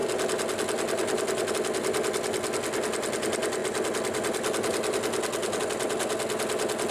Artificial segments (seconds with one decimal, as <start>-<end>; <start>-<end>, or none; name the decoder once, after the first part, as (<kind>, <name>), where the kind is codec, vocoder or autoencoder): none